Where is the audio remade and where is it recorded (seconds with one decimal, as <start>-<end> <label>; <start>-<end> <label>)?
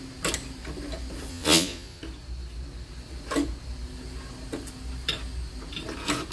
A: 0.0-1.3 recorded; 1.3-2.0 remade; 2.0-6.3 recorded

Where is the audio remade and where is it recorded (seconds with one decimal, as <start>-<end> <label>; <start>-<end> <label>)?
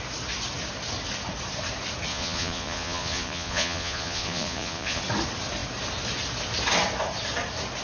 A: 0.0-2.1 recorded; 2.1-5.0 remade; 5.0-7.8 recorded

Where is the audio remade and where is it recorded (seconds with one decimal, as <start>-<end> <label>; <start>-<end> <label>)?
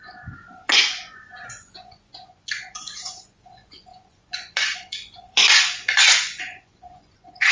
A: 0.0-7.5 remade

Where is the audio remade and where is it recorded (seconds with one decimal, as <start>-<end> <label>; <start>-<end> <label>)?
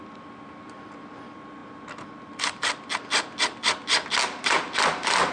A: 0.0-5.3 recorded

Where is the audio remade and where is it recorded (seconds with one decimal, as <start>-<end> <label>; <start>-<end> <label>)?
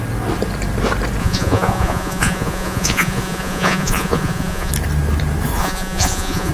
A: 0.0-1.2 recorded; 1.2-4.7 remade; 4.7-5.6 recorded; 5.6-6.5 remade